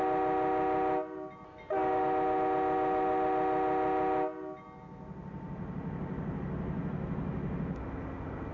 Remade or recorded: recorded